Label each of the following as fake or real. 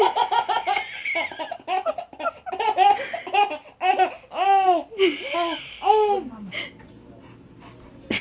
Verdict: real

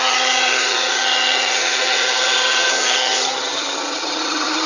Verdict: fake